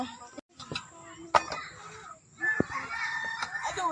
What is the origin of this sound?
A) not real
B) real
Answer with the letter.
B